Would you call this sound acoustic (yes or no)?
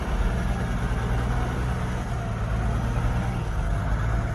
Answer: yes